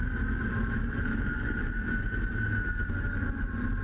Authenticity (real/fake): real